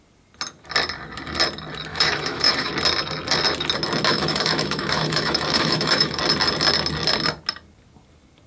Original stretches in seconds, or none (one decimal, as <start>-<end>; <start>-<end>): 0.0-1.9; 2.7-4.1; 6.2-8.5